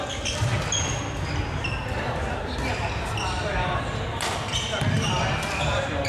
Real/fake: real